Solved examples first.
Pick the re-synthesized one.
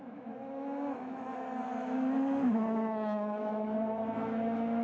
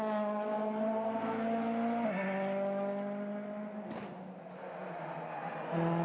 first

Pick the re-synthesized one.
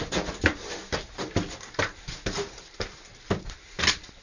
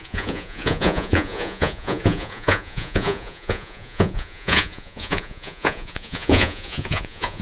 second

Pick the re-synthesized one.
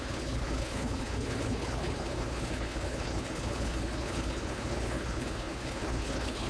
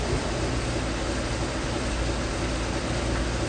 first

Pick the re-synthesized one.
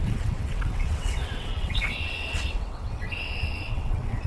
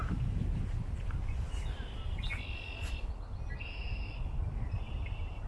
first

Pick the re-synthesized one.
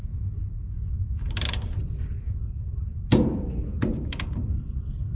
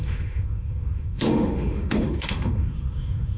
second